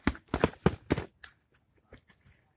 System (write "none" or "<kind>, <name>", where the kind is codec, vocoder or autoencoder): none